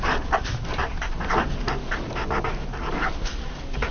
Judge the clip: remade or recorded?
recorded